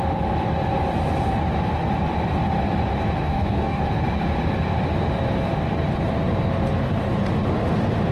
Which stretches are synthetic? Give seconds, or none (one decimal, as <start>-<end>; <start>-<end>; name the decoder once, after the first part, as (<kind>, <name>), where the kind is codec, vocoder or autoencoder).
3.2-3.8 (codec, DAC)